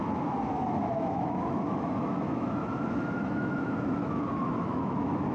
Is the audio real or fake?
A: fake